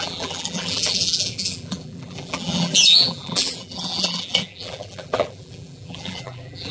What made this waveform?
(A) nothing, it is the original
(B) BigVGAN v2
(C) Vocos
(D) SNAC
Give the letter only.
B